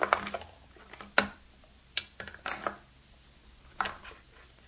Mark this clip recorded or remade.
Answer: recorded